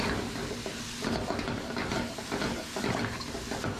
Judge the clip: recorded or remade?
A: recorded